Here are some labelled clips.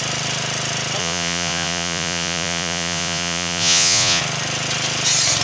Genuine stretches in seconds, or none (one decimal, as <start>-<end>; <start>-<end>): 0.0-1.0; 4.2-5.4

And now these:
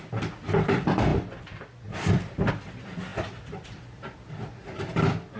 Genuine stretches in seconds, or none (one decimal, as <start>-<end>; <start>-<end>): 0.0-5.4

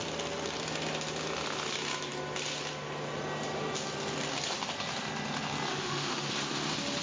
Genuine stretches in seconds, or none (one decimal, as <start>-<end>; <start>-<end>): 0.0-5.7; 6.3-7.0

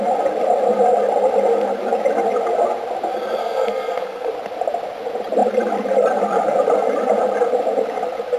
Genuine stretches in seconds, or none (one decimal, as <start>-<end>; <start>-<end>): 0.0-3.4; 4.3-8.4

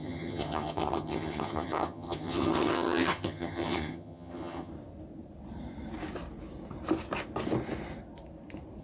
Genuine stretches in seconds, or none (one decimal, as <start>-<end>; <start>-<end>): 4.7-8.8